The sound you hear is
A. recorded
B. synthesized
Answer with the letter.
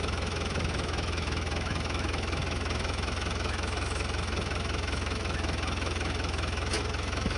B